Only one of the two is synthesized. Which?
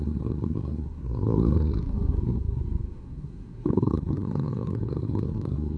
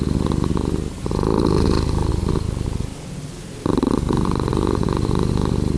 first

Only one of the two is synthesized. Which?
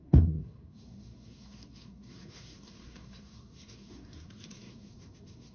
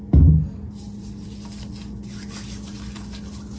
first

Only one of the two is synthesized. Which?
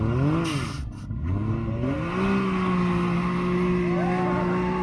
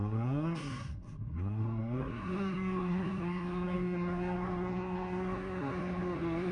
second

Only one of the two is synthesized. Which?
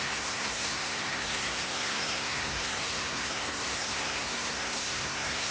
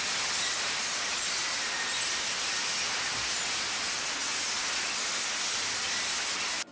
first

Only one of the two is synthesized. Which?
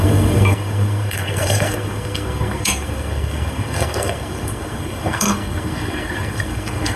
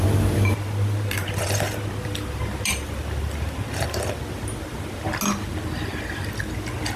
first